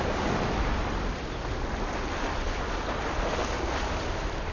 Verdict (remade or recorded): recorded